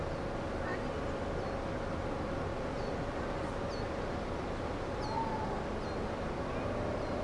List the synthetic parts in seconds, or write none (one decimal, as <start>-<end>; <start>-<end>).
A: none